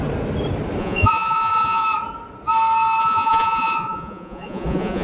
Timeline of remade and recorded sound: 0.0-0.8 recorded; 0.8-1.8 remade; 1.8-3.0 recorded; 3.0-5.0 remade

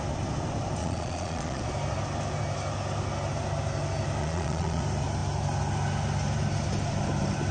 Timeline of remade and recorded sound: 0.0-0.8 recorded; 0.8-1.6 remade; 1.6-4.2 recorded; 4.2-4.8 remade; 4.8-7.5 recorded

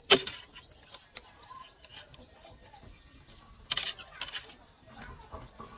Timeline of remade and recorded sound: 0.0-5.8 recorded

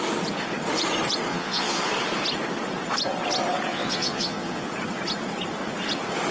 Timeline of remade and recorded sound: 0.0-1.3 recorded; 1.3-1.8 remade; 1.8-3.7 recorded; 3.7-4.7 remade; 4.7-6.3 recorded

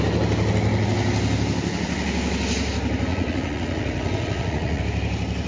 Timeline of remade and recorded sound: 0.0-3.1 recorded; 3.1-4.8 remade; 4.8-5.5 recorded